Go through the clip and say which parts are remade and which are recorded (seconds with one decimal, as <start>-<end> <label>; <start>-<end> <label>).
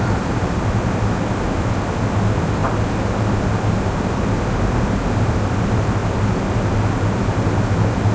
0.0-8.1 recorded